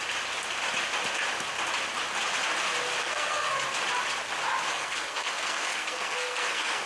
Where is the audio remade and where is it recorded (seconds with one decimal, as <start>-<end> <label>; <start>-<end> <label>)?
0.0-3.0 recorded; 3.0-3.5 remade; 3.5-4.7 recorded; 4.7-6.9 remade